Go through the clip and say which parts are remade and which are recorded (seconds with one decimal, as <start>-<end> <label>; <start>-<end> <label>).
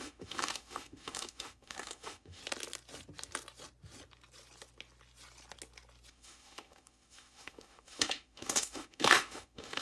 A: 0.0-2.4 remade; 2.4-6.1 recorded; 6.1-9.8 remade